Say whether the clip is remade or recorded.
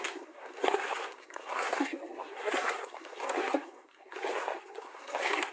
remade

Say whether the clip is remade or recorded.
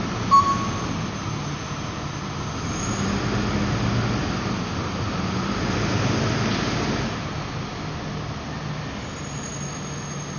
recorded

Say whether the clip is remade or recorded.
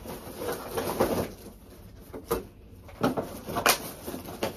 recorded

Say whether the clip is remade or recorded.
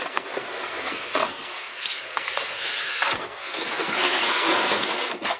remade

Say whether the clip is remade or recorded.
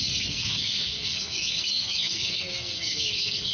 remade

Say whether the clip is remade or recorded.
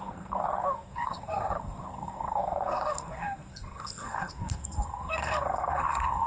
remade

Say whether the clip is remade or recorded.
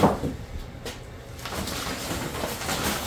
recorded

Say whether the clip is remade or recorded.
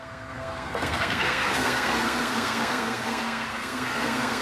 remade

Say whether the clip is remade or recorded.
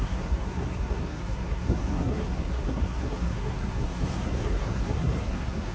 remade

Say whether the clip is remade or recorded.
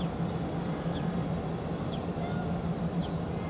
recorded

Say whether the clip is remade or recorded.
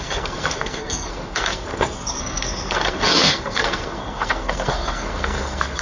remade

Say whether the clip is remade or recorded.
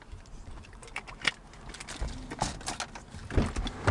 recorded